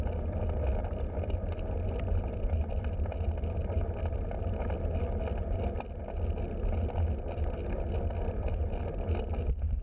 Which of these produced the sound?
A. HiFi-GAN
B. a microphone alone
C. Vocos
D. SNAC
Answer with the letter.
B